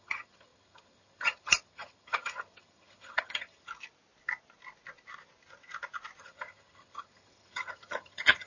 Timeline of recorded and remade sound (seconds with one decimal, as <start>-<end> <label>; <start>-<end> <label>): 0.0-3.7 remade; 3.7-6.2 recorded; 6.2-8.5 remade